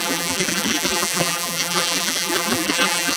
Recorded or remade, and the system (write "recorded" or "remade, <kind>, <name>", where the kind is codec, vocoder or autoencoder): remade, vocoder, BigVGAN v2